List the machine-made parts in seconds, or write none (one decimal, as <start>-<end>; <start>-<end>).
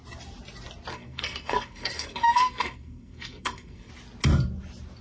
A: 0.9-3.9